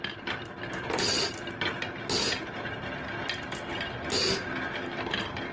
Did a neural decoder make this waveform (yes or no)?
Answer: no